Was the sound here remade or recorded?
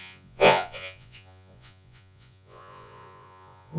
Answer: remade